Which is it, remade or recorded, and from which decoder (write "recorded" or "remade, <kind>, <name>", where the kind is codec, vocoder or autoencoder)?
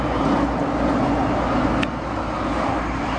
recorded